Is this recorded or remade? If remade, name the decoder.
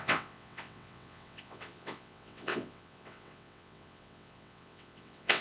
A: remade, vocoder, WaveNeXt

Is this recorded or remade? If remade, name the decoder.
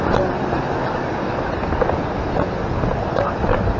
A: recorded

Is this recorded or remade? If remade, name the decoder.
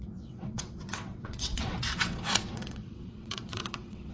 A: remade, vocoder, WaveNeXt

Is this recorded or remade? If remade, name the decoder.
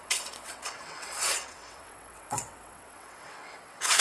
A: remade, vocoder, WaveNeXt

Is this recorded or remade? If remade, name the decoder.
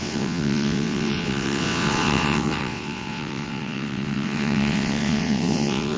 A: remade, vocoder, WaveNeXt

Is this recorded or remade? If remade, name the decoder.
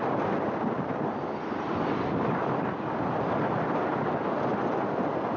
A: recorded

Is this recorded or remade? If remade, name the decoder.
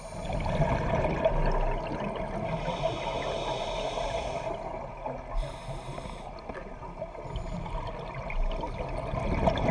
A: recorded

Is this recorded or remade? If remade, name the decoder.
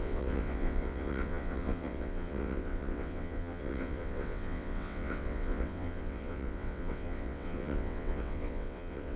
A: remade, vocoder, WaveNeXt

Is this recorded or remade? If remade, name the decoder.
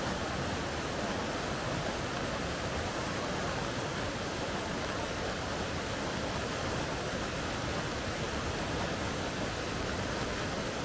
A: recorded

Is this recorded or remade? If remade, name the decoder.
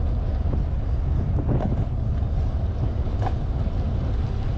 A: recorded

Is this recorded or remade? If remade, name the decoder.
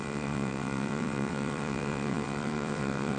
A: remade, vocoder, WaveNeXt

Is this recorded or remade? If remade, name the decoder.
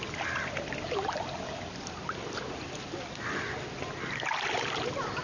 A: recorded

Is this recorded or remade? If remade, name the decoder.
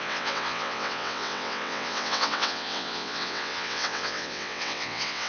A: remade, vocoder, WaveNeXt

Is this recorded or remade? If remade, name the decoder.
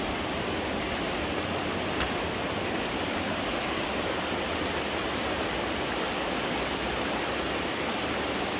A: recorded